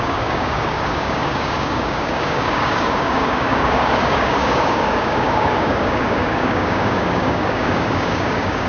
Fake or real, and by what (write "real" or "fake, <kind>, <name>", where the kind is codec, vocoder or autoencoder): fake, codec, DAC